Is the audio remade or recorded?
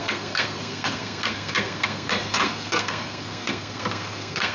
remade